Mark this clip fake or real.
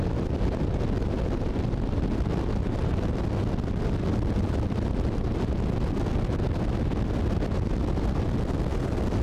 real